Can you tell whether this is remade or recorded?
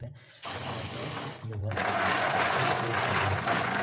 remade